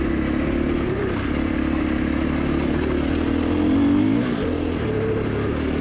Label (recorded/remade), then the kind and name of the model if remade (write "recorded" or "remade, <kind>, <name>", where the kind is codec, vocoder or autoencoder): recorded